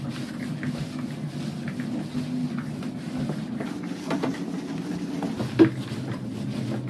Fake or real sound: real